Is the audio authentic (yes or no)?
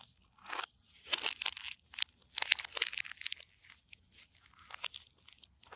yes